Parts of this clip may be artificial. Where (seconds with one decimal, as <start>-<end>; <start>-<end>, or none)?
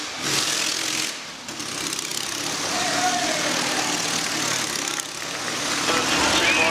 none